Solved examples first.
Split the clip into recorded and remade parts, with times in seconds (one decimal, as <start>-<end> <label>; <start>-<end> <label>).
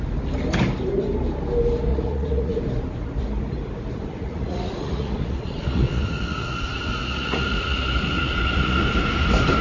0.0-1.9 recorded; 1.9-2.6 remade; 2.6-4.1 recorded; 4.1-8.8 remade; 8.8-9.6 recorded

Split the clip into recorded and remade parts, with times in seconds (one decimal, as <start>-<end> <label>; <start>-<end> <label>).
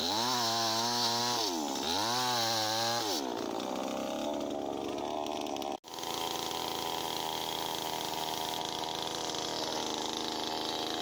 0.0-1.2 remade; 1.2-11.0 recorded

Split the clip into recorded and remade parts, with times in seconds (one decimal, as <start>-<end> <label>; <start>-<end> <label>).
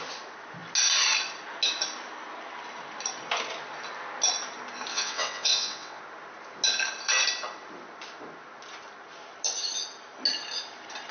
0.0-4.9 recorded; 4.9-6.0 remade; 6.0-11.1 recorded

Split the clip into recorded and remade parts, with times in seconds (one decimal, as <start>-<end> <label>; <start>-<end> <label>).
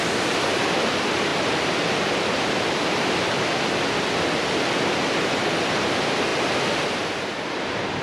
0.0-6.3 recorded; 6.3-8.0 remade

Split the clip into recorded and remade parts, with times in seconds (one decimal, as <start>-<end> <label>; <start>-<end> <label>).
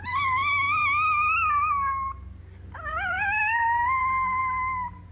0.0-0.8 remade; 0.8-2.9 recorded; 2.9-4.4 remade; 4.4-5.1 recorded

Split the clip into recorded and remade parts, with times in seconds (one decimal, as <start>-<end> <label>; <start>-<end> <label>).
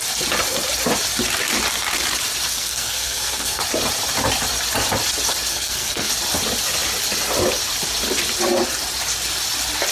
0.0-2.5 recorded; 2.5-3.6 remade; 3.6-5.5 recorded; 5.5-6.1 remade; 6.1-9.9 recorded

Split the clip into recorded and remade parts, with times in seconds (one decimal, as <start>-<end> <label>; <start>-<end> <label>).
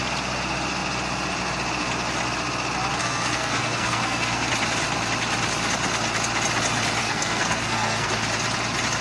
0.0-3.0 recorded; 3.0-4.5 remade; 4.5-7.0 recorded; 7.0-8.1 remade; 8.1-9.0 recorded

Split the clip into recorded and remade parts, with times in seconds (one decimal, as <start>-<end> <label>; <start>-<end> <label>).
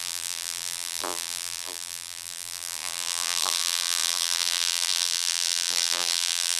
0.0-6.6 remade